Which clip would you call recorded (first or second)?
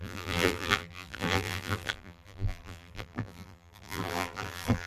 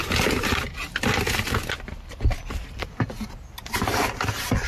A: second